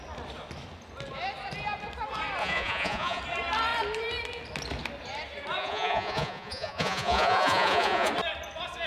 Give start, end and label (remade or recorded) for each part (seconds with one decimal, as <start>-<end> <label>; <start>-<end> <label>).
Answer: 0.0-2.4 recorded; 2.4-3.2 remade; 3.2-5.6 recorded; 5.6-8.1 remade; 8.1-8.9 recorded

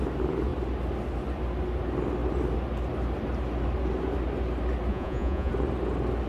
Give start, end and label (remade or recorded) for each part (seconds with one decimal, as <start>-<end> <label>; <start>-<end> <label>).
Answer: 0.0-4.9 recorded; 4.9-5.5 remade; 5.5-6.3 recorded

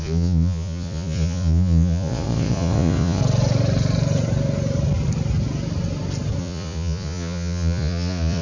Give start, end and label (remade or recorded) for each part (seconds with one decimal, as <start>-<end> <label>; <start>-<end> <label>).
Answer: 0.0-3.2 remade; 3.2-6.4 recorded; 6.4-8.4 remade

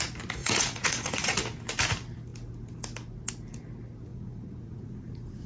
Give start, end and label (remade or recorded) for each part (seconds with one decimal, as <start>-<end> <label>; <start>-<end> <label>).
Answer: 0.0-0.4 recorded; 0.4-1.4 remade; 1.4-4.1 recorded; 4.1-5.5 remade

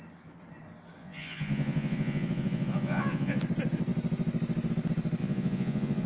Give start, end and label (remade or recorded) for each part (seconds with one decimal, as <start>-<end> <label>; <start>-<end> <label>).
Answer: 0.0-1.0 recorded; 1.0-3.4 remade; 3.4-5.2 recorded; 5.2-6.1 remade

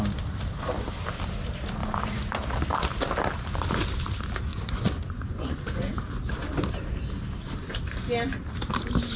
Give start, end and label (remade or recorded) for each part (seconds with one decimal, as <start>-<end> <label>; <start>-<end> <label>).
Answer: 0.0-1.8 recorded; 1.8-2.4 remade; 2.4-4.5 recorded; 4.5-6.0 remade; 6.0-9.2 recorded